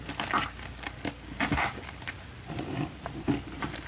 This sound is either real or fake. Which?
fake